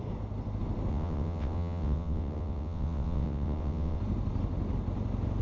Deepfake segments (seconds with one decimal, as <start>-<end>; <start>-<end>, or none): 0.9-4.0